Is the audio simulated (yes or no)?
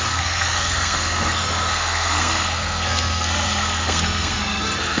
yes